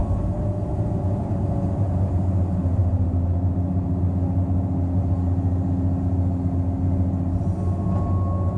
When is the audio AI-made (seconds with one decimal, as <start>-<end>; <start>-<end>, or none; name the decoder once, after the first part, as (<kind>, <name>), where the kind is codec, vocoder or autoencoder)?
none